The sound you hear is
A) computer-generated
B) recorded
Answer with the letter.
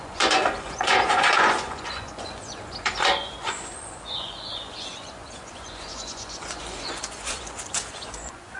A